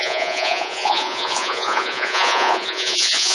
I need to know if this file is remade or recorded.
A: remade